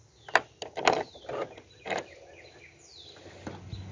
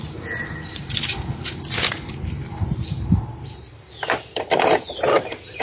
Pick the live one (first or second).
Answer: first